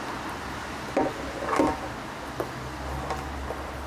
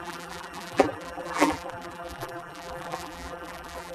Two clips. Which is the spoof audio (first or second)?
second